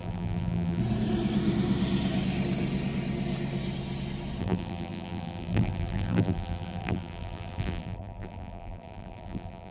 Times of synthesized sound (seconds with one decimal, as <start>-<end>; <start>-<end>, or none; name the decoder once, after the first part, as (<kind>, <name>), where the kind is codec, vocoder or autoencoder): 0.0-0.8 (vocoder, BigVGAN v2); 4.4-9.7